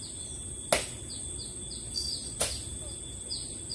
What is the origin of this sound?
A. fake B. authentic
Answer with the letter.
B